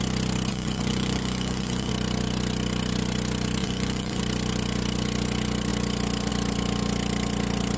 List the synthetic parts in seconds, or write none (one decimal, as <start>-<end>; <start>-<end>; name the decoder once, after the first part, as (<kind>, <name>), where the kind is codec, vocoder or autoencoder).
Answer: 0.5-1.9 (vocoder, Vocos); 3.6-4.2